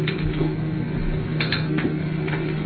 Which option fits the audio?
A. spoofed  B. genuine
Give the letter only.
A